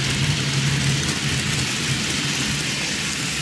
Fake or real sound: real